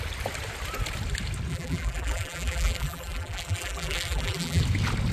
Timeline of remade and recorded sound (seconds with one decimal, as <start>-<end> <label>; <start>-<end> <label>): 0.0-1.5 recorded; 1.5-4.6 remade; 4.6-5.1 recorded

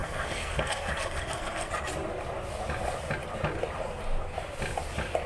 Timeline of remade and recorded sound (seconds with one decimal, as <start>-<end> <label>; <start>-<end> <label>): 0.0-1.7 remade; 1.7-5.3 recorded

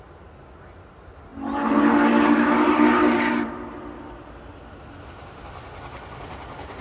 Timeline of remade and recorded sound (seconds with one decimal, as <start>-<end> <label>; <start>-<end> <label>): 0.0-6.8 recorded